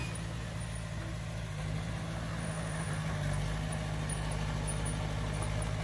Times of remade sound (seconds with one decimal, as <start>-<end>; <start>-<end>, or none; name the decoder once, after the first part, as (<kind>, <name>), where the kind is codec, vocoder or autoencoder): 2.4-2.9 (autoencoder, DAC-VAE)